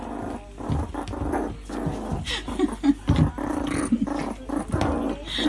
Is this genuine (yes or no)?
yes